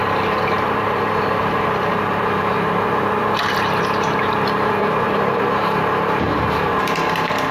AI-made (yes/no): yes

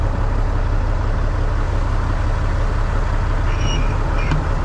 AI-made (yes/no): no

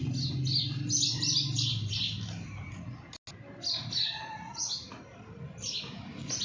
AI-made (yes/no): no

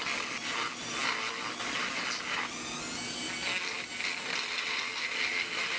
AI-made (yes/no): no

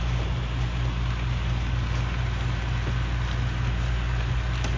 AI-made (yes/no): no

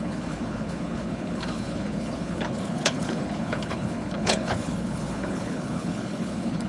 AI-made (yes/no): yes